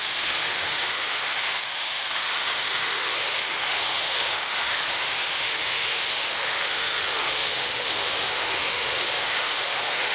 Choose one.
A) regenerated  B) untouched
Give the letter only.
A